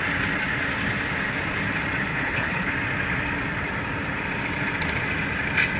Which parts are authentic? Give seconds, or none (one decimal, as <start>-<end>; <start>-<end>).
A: 0.0-2.1; 2.7-5.8